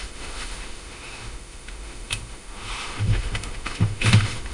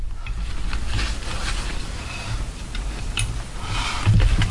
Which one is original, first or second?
second